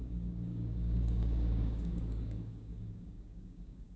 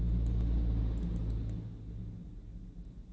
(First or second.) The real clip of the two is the second